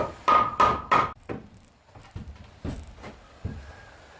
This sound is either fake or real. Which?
real